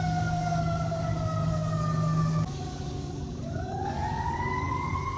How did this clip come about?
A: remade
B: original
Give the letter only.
A